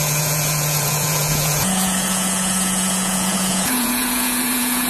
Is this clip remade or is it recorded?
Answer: remade